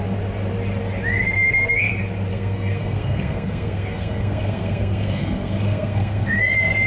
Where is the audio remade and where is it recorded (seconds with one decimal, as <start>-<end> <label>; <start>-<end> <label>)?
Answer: 0.0-1.2 recorded; 1.2-1.9 remade; 1.9-2.3 recorded; 2.3-6.4 remade; 6.4-6.9 recorded